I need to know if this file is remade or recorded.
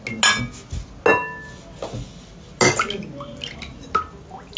recorded